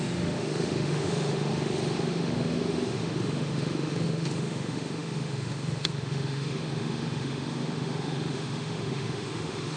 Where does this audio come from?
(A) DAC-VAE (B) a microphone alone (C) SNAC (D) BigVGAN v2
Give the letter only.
A